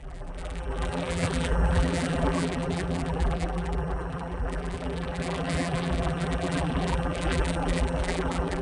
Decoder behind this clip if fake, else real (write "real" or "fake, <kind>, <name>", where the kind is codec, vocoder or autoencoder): fake, vocoder, BigVGAN v2